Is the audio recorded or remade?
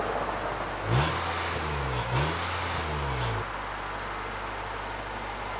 recorded